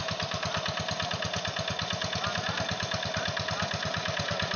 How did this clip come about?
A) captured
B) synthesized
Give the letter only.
A